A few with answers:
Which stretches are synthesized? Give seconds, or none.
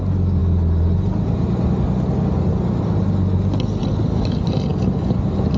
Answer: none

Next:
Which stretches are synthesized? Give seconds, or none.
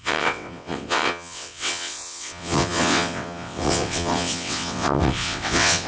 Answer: 0.0-5.9 (vocoder, WaveNeXt)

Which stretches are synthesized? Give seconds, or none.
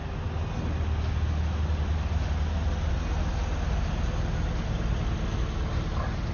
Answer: none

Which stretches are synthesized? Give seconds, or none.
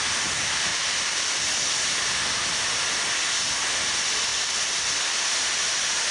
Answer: 0.7-1.5 (vocoder, BigVGAN v2); 4.3-4.9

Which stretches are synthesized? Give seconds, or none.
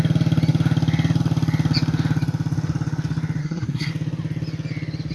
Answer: 3.4-3.9 (codec, SNAC)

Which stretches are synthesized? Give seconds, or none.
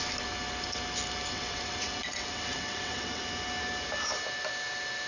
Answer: 1.3-3.2 (vocoder, WaveNeXt)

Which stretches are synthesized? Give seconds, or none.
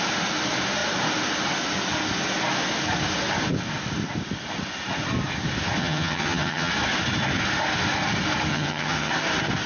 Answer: 5.8-6.7 (vocoder, HiFi-GAN); 8.5-9.1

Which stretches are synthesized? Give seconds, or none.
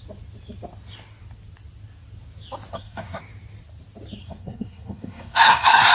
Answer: 2.7-3.2 (codec, SNAC); 4.2-5.9